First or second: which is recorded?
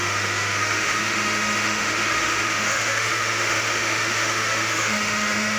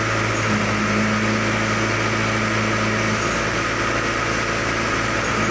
second